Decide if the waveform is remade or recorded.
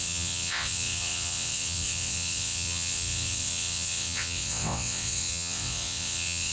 remade